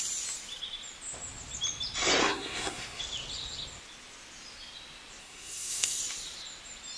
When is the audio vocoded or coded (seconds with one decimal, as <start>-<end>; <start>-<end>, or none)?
2.2-3.0; 5.2-6.0